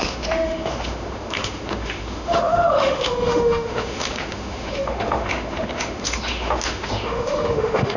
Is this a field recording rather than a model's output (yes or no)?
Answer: no